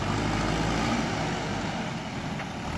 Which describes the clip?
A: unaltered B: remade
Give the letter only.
A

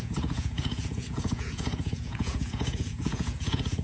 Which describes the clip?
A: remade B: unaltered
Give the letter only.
A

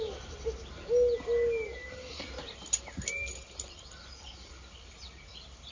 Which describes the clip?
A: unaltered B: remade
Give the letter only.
A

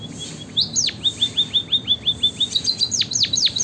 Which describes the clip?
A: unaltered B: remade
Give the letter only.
A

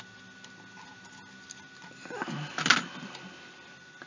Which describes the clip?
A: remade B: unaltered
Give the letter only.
B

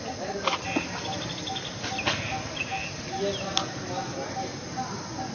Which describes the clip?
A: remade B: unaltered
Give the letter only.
B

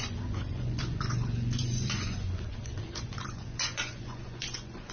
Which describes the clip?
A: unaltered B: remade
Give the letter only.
B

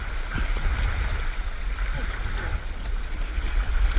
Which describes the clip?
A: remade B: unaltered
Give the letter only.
B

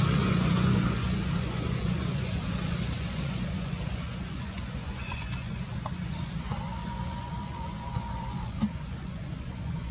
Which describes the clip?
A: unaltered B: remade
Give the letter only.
B